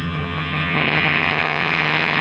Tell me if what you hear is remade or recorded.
remade